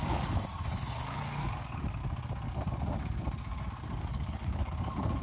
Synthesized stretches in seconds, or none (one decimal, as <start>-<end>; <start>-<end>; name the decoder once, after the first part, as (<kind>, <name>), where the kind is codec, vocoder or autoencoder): 0.0-2.0 (codec, DAC); 4.0-5.2